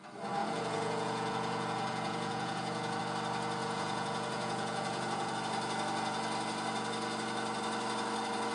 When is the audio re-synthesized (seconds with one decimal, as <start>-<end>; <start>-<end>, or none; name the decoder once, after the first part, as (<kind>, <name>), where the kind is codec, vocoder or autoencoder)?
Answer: 0.4-3.0 (vocoder, Vocos); 3.6-5.3